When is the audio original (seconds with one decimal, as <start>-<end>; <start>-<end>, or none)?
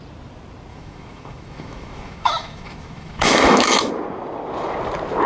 0.0-0.7; 3.9-5.3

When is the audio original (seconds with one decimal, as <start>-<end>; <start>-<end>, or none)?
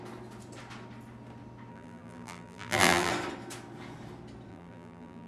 0.0-1.7; 3.1-4.5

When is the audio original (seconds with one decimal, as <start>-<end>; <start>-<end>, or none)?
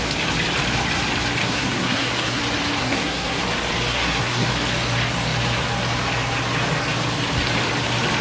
0.0-1.4; 2.4-2.8; 3.4-3.9; 4.5-8.2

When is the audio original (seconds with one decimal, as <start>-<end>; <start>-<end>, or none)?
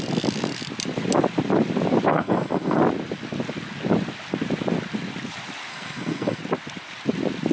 0.0-2.1; 2.8-5.7; 6.4-7.5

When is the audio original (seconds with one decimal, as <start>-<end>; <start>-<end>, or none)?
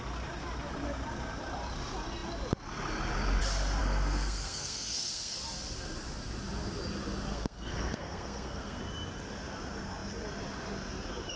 0.0-3.8; 5.4-7.3; 8.8-11.4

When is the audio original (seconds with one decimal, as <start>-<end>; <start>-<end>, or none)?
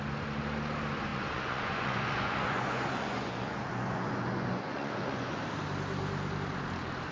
0.0-1.1; 5.4-7.1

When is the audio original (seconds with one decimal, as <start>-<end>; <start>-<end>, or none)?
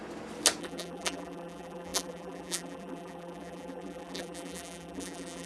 0.0-0.6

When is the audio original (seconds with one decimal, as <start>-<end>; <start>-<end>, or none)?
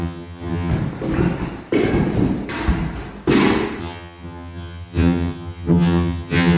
0.7-3.8